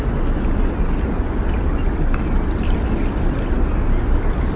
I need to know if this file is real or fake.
real